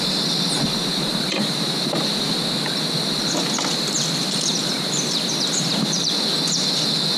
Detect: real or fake real